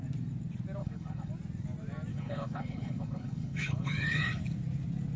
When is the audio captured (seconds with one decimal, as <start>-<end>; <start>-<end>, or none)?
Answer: 0.0-0.8; 1.3-2.1; 4.4-5.2